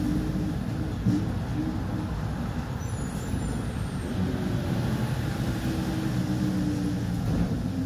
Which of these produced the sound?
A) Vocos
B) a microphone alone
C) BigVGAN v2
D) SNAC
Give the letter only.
B